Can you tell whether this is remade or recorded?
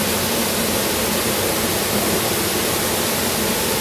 recorded